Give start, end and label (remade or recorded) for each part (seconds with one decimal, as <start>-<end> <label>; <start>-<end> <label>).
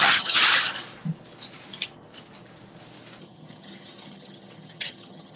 0.0-0.4 remade; 0.4-3.2 recorded; 3.2-5.4 remade